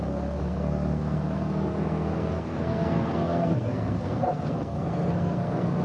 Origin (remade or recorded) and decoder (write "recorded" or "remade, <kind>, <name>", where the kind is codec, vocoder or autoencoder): remade, codec, SNAC